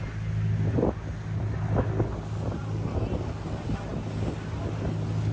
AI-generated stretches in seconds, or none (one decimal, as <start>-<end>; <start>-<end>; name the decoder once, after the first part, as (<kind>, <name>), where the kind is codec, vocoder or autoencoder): none